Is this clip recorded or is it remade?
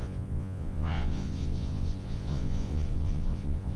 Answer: remade